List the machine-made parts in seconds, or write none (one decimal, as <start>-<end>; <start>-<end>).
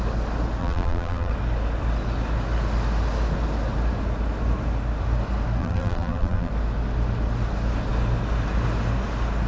0.6-1.3; 5.6-6.5